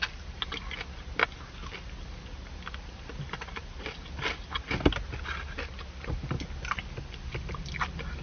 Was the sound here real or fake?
real